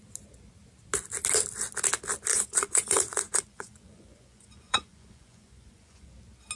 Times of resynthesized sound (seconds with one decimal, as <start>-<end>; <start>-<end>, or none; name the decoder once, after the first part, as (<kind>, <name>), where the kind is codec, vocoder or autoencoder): 2.3-6.1 (vocoder, Vocos)